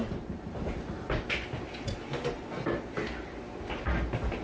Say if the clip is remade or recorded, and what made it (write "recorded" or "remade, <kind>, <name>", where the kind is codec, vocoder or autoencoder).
recorded